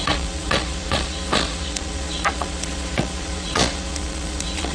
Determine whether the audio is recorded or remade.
remade